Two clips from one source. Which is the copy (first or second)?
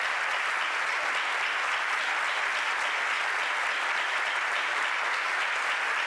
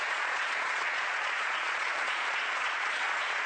second